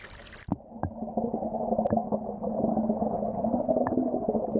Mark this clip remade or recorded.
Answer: recorded